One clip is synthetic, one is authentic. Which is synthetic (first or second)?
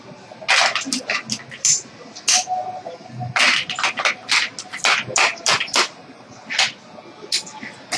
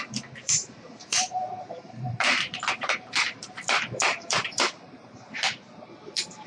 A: second